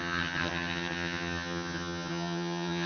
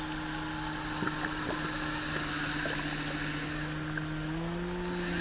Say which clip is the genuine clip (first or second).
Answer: second